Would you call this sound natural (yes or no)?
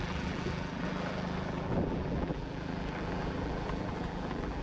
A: no